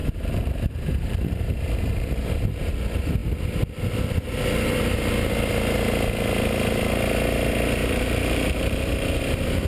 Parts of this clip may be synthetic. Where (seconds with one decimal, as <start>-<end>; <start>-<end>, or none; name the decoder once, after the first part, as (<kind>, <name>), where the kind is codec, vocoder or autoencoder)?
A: 0.0-2.7 (vocoder, BigVGAN v2); 7.8-9.2